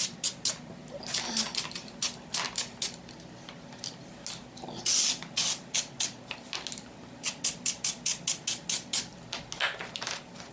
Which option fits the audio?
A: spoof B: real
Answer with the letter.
B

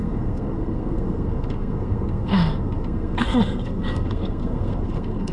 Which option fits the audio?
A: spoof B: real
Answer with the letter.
A